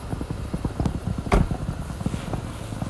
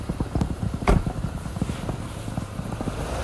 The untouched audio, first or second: first